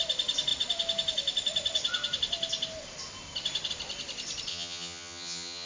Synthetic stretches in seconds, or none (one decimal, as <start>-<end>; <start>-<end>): 4.5-5.7